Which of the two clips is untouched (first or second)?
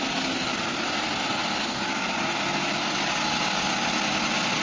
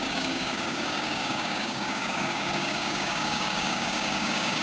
first